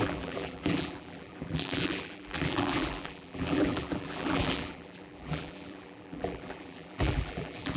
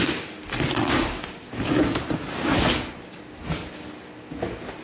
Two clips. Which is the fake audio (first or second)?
first